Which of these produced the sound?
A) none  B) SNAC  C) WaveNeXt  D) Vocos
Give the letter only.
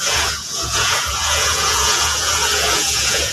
D